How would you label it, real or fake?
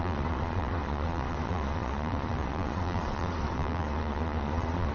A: fake